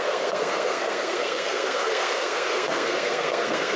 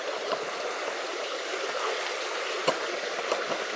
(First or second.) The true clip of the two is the second